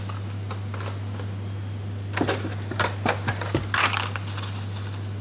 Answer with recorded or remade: recorded